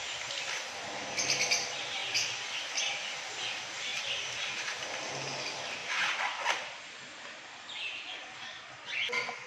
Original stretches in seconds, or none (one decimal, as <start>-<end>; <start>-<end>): 0.0-8.2; 8.9-9.5